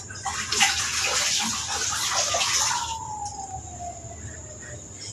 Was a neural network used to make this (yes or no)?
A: yes